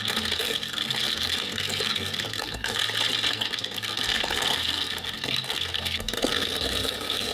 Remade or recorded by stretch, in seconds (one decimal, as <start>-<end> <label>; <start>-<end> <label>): 0.0-2.8 remade; 2.8-3.3 recorded; 3.3-7.3 remade